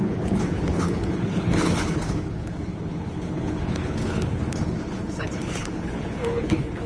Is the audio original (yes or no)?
no